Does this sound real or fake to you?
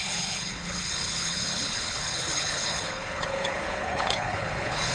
fake